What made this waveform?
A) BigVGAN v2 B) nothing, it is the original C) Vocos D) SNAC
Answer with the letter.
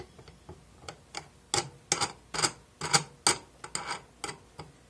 B